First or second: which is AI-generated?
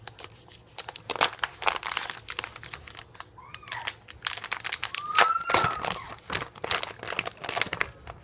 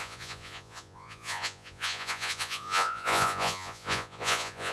second